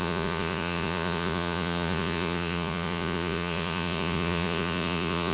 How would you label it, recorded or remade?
remade